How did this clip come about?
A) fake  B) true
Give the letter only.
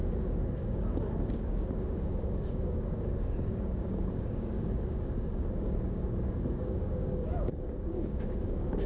A